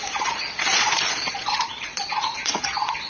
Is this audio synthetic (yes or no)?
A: yes